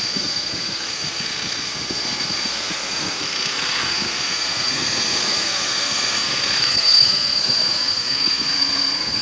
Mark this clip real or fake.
fake